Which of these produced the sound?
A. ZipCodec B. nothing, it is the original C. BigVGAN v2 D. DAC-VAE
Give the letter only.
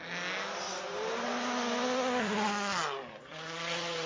B